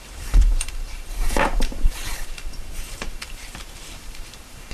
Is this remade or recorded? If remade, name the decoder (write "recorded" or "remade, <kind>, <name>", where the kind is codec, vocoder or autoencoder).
remade, vocoder, BigVGAN v2